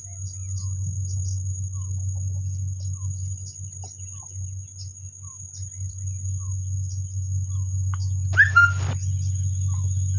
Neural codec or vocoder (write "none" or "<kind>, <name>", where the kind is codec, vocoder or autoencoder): none